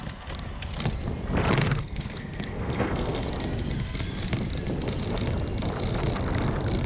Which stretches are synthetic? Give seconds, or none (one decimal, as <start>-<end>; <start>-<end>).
1.6-3.2